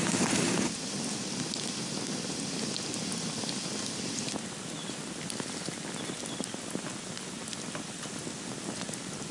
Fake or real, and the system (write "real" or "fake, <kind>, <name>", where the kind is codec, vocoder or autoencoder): real